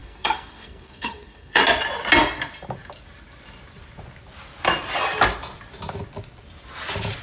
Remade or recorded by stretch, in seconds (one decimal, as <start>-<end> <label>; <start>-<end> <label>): 0.0-1.6 remade; 1.6-7.2 recorded